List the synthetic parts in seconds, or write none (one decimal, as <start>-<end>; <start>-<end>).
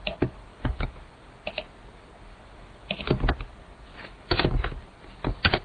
0.5-1.3; 2.3-3.0; 3.9-4.5